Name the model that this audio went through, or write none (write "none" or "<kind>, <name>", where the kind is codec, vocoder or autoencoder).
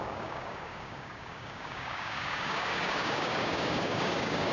codec, DAC